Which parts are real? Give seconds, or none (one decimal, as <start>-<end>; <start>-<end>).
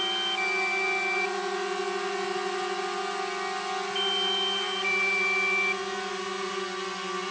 0.0-5.8; 6.5-7.3